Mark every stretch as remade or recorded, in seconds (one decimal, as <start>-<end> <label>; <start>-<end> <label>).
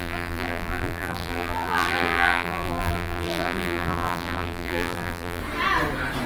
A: 0.0-5.4 remade; 5.4-6.3 recorded